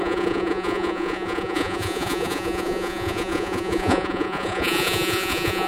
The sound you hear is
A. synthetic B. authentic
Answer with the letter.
A